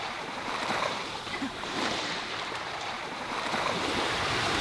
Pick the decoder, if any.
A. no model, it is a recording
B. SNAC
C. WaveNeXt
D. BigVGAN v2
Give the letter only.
D